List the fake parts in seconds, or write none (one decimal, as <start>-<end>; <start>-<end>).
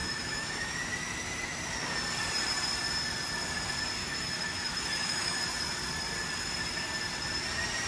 0.0-0.8; 4.0-5.4